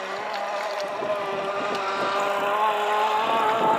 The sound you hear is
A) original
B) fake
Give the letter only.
A